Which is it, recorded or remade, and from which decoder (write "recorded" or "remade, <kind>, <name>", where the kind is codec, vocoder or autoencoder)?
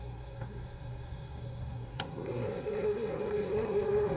remade, codec, SNAC